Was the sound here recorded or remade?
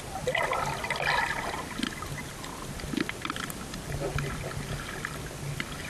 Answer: recorded